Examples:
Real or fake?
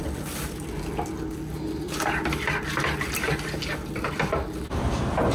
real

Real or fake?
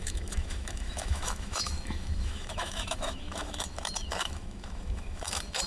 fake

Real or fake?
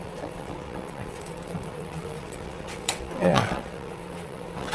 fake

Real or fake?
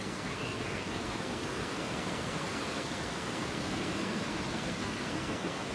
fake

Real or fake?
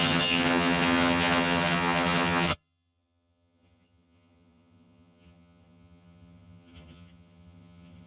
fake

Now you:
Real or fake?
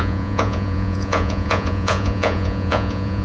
fake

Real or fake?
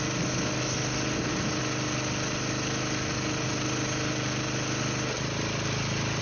real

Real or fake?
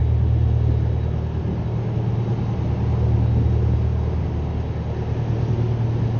real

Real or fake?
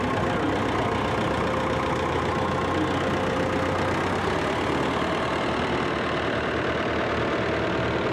real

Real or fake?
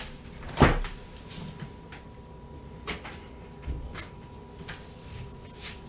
real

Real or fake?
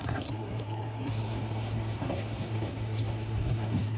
fake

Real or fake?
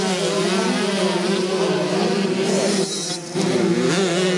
real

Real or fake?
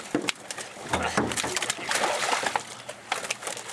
real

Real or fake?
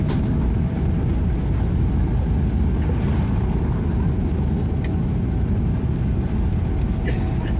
real